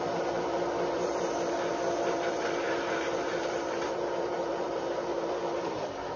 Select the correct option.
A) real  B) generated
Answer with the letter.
B